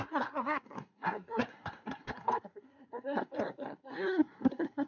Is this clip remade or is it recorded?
remade